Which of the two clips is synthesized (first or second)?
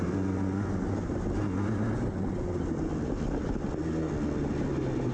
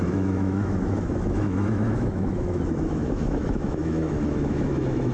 second